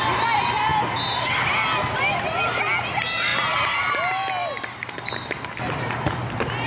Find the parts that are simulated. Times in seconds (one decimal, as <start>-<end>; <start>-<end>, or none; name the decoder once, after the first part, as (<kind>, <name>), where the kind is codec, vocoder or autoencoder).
3.3-3.9 (vocoder, BigVGAN v2); 4.4-5.1

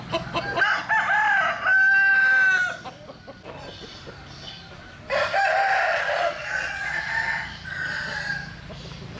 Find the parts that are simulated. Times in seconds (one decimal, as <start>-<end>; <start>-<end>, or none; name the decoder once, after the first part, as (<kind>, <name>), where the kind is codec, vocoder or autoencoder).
5.9-7.0 (vocoder, Vocos)

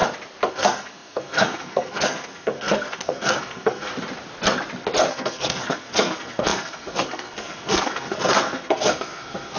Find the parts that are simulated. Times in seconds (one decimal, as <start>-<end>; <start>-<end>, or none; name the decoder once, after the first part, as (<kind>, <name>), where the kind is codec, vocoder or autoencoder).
0.5-3.9 (codec, SNAC); 5.1-9.6

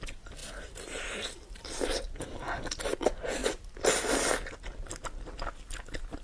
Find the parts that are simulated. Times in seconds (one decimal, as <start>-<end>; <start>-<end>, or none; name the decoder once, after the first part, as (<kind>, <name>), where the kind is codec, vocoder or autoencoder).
none

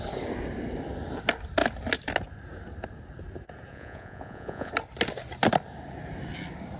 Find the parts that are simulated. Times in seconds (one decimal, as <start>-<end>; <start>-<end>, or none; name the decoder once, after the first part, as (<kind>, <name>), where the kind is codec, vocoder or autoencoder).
3.7-4.7 (vocoder, Vocos)

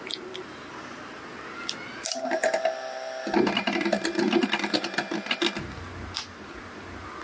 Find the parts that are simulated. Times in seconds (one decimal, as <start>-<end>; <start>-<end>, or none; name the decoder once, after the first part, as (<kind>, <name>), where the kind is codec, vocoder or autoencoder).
none

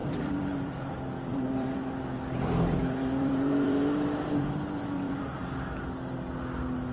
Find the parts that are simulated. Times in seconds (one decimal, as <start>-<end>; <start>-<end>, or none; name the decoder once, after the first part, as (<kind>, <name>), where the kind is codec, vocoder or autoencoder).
0.0-0.9 (vocoder, BigVGAN v2); 1.3-5.4